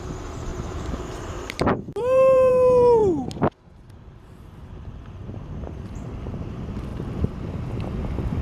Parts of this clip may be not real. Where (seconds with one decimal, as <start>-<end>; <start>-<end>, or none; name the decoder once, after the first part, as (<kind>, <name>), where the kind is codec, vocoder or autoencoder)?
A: 0.5-2.5 (vocoder, BigVGAN v2); 5.2-5.7; 6.9-7.5